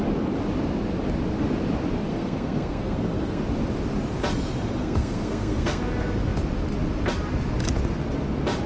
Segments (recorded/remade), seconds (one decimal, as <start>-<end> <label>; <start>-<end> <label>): 0.0-2.1 recorded; 2.1-3.4 remade; 3.4-4.8 recorded; 4.8-5.8 remade; 5.8-8.7 recorded